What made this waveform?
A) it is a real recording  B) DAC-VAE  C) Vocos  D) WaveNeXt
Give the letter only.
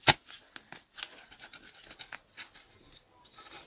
A